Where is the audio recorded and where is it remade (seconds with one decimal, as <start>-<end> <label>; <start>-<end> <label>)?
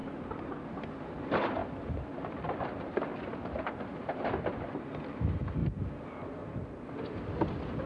0.0-0.5 remade; 0.5-3.1 recorded; 3.1-3.7 remade; 3.7-7.9 recorded